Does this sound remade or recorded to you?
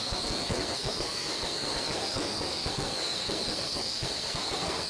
remade